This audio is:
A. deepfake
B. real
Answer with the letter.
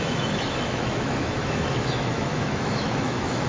A